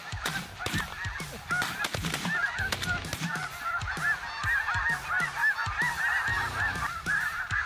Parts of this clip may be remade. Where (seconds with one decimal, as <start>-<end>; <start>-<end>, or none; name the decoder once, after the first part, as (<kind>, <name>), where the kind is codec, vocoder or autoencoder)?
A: none